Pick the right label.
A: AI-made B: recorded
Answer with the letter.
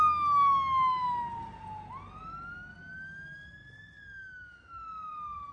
B